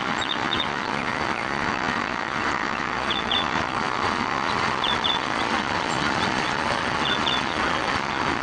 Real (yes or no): no